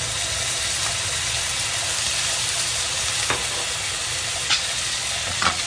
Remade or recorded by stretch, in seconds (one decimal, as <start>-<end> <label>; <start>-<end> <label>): 0.0-4.4 recorded; 4.4-5.7 remade